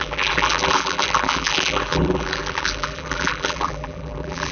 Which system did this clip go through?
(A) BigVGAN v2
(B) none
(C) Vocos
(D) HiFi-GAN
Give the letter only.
A